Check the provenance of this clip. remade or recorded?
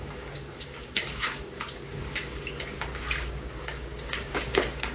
remade